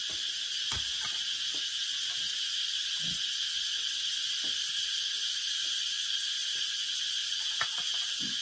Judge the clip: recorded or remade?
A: recorded